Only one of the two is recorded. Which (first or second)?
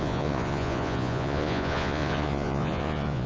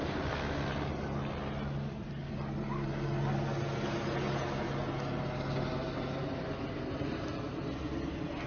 second